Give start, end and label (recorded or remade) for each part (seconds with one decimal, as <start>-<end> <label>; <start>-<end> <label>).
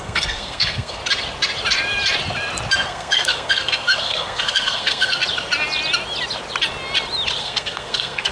0.0-1.0 remade; 1.0-2.7 recorded; 2.7-5.2 remade; 5.2-7.4 recorded; 7.4-8.3 remade